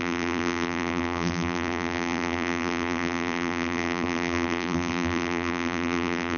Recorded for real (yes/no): no